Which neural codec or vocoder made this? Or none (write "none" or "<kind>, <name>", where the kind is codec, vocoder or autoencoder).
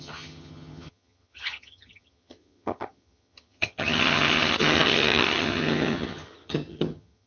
vocoder, HiFi-GAN